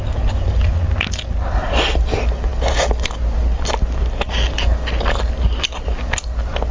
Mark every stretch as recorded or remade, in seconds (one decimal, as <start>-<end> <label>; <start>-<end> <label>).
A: 0.0-6.7 recorded